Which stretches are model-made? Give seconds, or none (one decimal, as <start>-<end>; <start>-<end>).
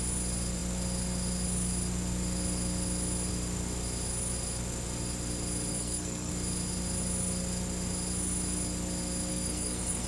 5.7-6.3; 9.3-10.1